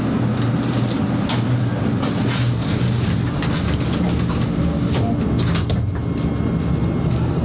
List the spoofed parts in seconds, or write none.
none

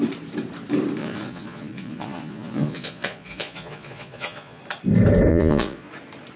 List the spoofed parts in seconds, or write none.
1.0-4.6 (vocoder, Vocos); 5.3-5.9